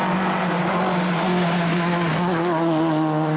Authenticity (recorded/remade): recorded